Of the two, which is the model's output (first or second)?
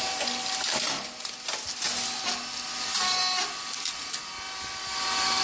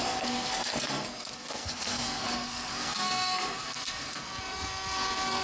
second